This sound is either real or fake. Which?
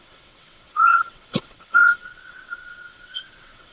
fake